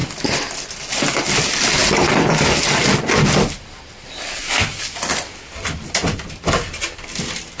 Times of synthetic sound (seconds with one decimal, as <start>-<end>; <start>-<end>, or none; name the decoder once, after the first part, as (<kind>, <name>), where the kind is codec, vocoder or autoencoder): none